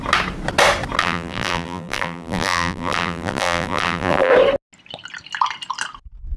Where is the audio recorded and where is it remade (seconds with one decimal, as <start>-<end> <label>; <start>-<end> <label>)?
0.0-1.0 recorded; 1.0-4.3 remade; 4.3-6.4 recorded